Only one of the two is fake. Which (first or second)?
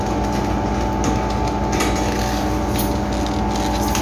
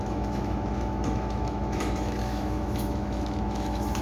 second